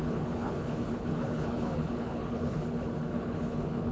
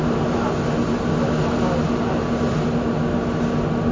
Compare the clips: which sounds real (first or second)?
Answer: second